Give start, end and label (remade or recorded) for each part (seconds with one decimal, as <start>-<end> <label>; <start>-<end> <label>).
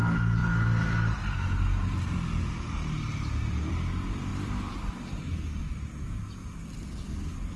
0.0-4.3 recorded; 4.3-5.3 remade; 5.3-7.6 recorded